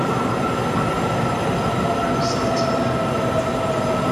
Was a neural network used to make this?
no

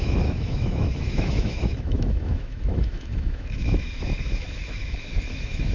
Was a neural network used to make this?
yes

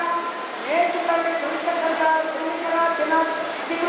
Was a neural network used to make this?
no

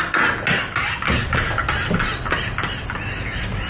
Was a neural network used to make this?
no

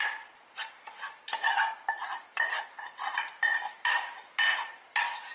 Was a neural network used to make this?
no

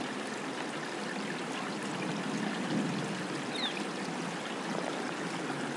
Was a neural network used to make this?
no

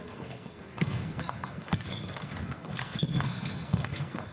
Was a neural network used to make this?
yes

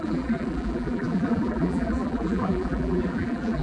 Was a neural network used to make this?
yes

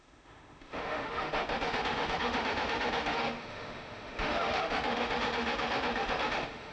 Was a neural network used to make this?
yes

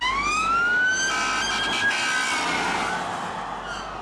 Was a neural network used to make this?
no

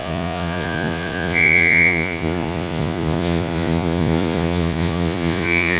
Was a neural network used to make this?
yes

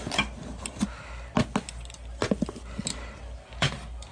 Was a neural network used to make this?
no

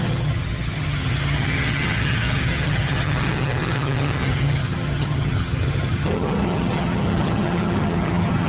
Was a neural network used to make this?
yes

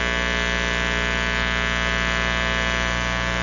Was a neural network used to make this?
no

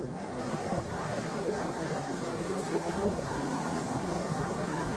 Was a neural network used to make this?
yes